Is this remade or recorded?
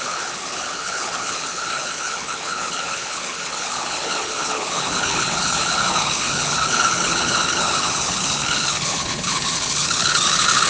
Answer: remade